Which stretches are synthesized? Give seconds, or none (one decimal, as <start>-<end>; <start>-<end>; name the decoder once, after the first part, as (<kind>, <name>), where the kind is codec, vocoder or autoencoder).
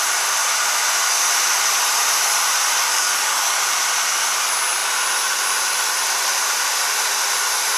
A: 2.9-3.6 (codec, DAC)